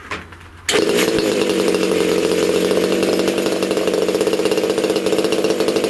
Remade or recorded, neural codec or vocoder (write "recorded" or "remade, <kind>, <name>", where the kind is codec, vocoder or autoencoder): recorded